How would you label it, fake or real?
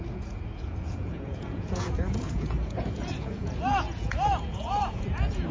fake